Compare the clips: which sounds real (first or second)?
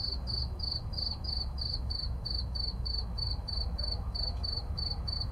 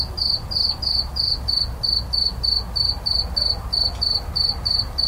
second